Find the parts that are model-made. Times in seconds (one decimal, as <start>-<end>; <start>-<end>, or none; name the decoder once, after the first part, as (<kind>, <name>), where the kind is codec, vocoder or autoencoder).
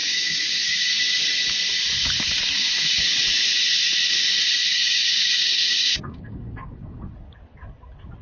0.0-1.0 (codec, DAC); 4.7-7.1